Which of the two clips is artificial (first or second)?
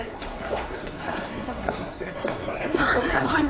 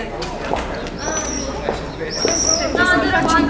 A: first